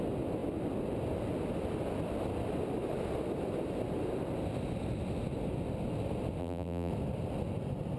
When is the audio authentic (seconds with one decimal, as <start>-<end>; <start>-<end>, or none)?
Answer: 0.0-6.4; 6.9-8.0